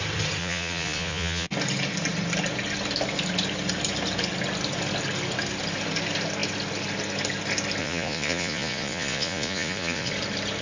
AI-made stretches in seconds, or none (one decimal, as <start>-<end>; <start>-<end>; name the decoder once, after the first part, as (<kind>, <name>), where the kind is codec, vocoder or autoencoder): 0.4-1.5 (vocoder, Vocos); 7.8-10.1